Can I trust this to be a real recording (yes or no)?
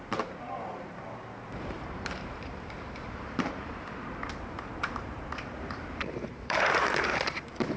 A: no